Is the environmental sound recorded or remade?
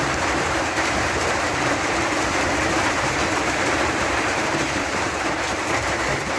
remade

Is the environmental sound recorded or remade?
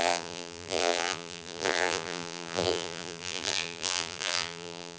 remade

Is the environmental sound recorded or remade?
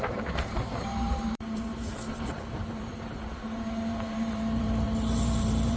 remade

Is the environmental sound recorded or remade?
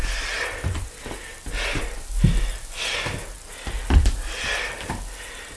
recorded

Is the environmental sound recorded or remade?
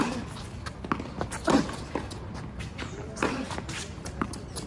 recorded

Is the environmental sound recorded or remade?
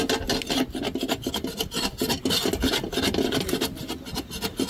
recorded